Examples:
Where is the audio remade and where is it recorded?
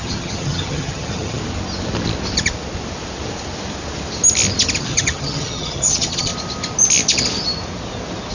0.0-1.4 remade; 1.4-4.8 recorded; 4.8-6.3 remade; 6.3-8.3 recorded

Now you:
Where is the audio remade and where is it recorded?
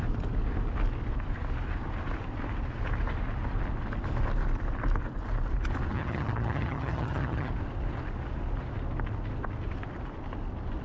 0.0-5.9 recorded; 5.9-7.5 remade; 7.5-10.8 recorded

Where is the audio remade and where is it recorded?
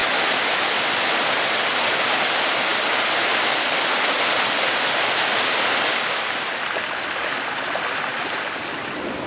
0.0-9.3 recorded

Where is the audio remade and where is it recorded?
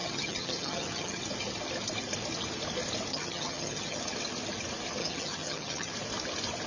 0.0-1.2 remade; 1.2-3.1 recorded; 3.1-4.0 remade; 4.0-5.0 recorded; 5.0-5.9 remade; 5.9-6.7 recorded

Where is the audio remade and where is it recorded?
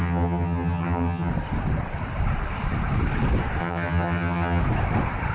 0.0-1.3 remade; 1.3-3.6 recorded; 3.6-4.6 remade; 4.6-5.3 recorded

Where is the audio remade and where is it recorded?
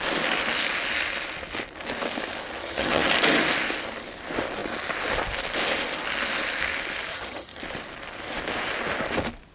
0.0-2.6 recorded; 2.6-3.1 remade; 3.1-7.1 recorded; 7.1-7.6 remade; 7.6-9.5 recorded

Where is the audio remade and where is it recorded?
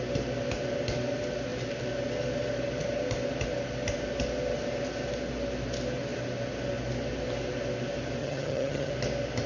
0.0-8.2 recorded; 8.2-8.9 remade; 8.9-9.5 recorded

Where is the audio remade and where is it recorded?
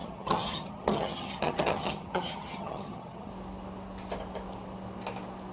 0.0-3.3 remade; 3.3-5.5 recorded